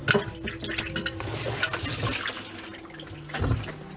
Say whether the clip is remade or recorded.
recorded